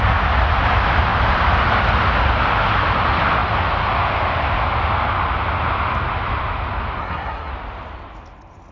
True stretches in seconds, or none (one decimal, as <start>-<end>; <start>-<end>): 0.0-7.0; 7.5-8.7